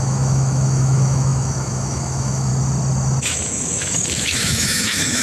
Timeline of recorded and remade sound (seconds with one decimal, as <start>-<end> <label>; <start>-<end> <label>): 0.0-2.5 remade; 2.5-3.2 recorded; 3.2-5.2 remade